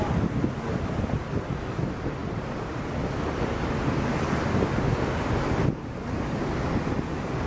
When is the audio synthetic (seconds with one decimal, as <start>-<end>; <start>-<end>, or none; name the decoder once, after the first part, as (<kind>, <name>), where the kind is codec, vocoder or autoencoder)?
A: none